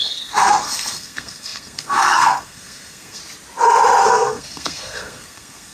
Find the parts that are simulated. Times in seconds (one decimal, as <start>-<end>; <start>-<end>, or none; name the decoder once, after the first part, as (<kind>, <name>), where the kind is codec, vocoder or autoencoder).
0.0-3.2 (codec, SNAC); 4.0-5.7